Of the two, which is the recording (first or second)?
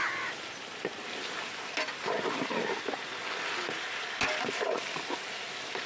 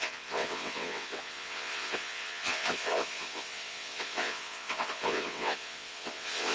first